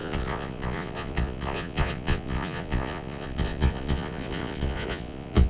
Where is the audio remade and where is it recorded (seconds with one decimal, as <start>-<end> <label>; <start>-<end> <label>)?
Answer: 0.0-5.5 remade